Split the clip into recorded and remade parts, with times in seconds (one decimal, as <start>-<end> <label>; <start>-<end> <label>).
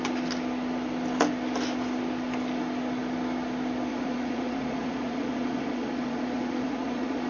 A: 0.0-3.9 recorded; 3.9-7.3 remade